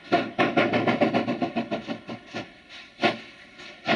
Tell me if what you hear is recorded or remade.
recorded